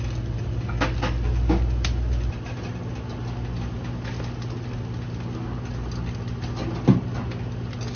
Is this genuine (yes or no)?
yes